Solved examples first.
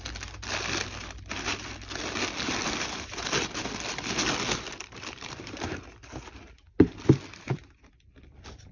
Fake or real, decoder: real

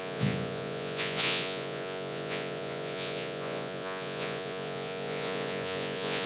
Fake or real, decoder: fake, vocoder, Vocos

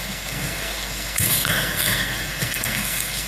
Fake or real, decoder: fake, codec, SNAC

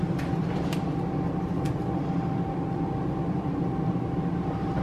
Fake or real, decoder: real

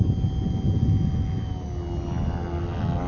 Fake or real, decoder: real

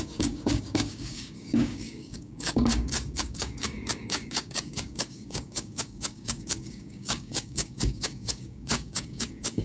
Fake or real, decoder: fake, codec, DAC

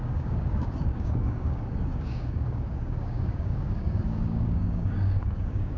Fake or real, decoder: fake, codec, DAC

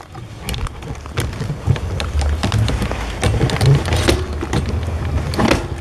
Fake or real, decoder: real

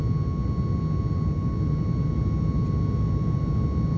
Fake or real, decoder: real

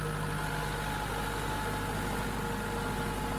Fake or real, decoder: real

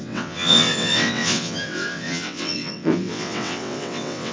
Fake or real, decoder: fake, vocoder, WaveNeXt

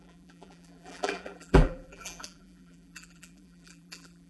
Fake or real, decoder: fake, vocoder, BigVGAN v2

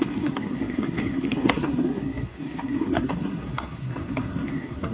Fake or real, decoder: fake, codec, SNAC